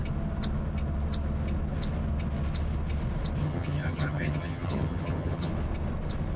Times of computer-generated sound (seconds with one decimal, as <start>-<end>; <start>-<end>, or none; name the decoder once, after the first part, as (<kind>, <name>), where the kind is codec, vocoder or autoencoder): 3.4-5.5 (vocoder, HiFi-GAN)